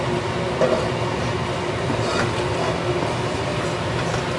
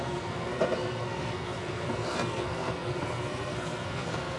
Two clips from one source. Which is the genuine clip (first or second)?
first